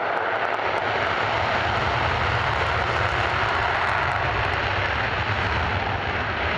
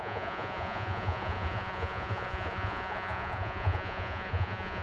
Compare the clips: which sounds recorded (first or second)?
first